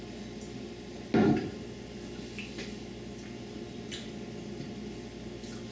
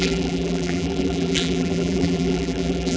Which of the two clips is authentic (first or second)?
first